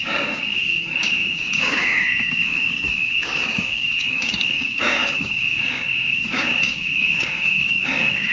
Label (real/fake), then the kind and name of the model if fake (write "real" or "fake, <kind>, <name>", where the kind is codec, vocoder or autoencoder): fake, codec, DAC